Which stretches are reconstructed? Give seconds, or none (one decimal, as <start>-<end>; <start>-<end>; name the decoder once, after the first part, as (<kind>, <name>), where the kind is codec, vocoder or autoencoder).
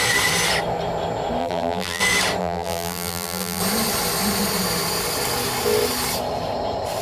1.4-2.0 (vocoder, BigVGAN v2); 2.4-3.6